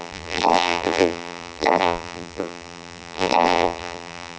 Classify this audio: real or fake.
fake